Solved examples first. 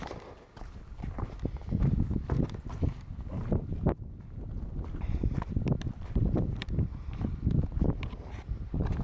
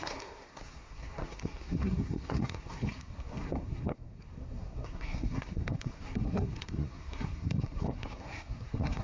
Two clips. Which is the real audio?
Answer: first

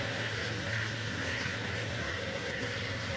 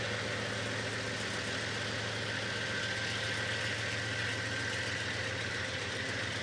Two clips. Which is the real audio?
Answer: second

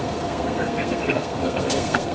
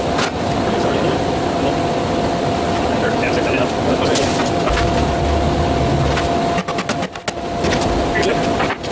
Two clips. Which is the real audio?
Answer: second